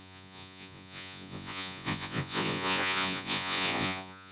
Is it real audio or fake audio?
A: fake